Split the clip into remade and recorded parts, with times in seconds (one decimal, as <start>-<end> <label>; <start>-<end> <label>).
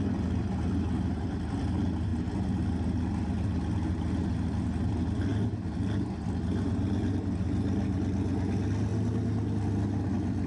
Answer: 0.0-10.5 recorded